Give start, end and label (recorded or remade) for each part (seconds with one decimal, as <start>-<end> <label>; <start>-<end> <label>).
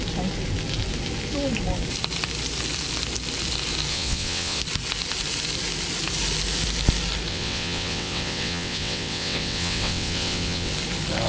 0.0-3.9 recorded; 3.9-4.6 remade; 4.6-7.3 recorded; 7.3-10.7 remade; 10.7-11.3 recorded